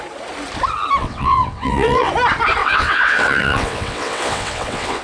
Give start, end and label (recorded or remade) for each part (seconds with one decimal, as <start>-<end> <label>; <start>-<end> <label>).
0.0-1.0 recorded; 1.0-2.1 remade; 2.1-2.6 recorded; 2.6-5.0 remade

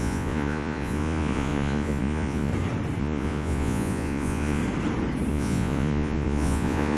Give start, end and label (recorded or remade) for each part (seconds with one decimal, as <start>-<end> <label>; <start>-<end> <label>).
0.0-2.5 remade; 2.5-3.0 recorded; 3.0-4.6 remade; 4.6-5.3 recorded; 5.3-7.0 remade

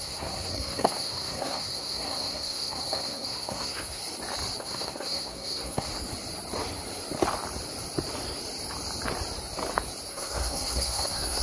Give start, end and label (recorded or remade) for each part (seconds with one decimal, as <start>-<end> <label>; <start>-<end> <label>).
0.0-4.0 remade; 4.0-4.6 recorded; 4.6-5.9 remade; 5.9-10.1 recorded; 10.1-11.4 remade

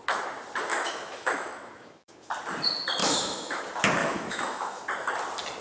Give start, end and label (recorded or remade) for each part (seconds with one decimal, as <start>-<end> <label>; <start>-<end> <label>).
0.0-0.7 recorded; 0.7-2.3 remade; 2.3-3.0 recorded; 3.0-3.6 remade; 3.6-4.0 recorded; 4.0-4.8 remade; 4.8-5.6 recorded

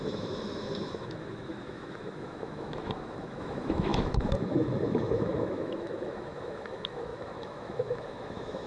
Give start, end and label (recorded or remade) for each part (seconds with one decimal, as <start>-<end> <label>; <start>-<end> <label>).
0.0-8.7 remade

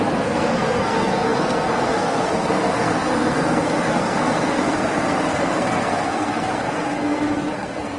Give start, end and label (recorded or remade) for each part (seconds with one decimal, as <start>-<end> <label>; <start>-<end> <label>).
0.0-8.0 remade

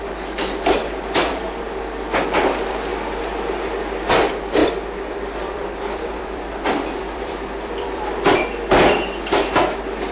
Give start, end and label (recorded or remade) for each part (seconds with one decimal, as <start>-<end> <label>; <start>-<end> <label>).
0.0-0.8 recorded; 0.8-1.6 remade; 1.6-4.6 recorded; 4.6-8.0 remade; 8.0-10.1 recorded